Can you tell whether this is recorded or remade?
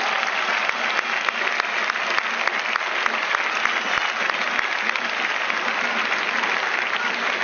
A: recorded